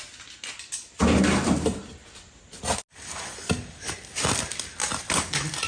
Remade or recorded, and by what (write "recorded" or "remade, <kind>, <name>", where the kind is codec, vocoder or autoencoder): recorded